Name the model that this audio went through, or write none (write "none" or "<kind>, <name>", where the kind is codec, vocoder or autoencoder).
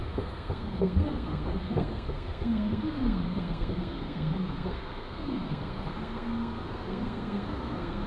codec, SNAC